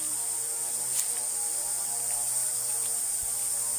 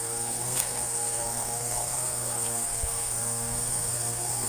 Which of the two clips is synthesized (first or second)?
second